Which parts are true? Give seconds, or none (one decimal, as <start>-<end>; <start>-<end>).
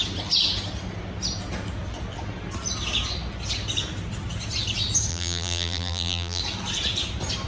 0.0-5.1; 6.4-7.5